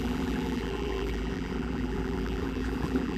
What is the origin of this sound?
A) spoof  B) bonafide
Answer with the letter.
A